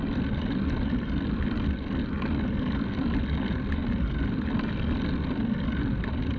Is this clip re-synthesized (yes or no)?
no